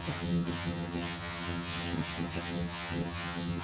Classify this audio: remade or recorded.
remade